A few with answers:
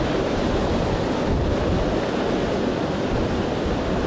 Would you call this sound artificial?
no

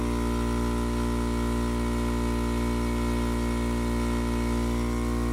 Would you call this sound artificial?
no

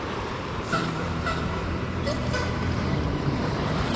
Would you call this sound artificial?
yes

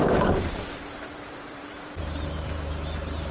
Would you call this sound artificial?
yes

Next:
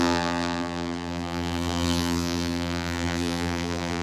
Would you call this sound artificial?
yes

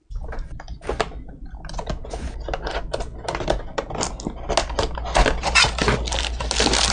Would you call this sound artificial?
no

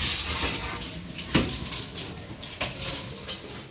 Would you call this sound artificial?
no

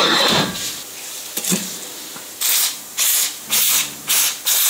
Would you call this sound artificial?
yes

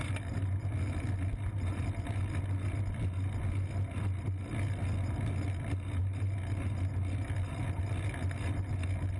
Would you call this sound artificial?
no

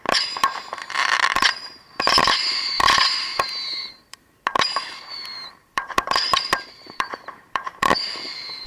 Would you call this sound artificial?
yes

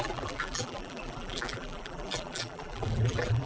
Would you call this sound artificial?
yes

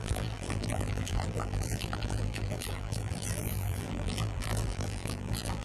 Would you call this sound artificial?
yes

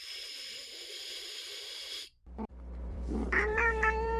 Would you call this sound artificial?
yes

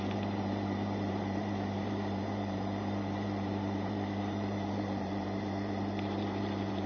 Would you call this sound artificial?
yes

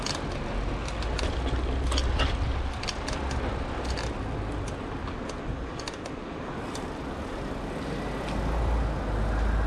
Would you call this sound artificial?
no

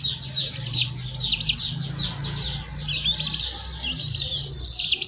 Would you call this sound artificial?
no